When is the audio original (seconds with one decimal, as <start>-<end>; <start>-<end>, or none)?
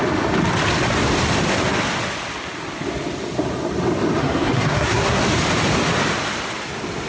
0.0-4.2; 5.2-7.1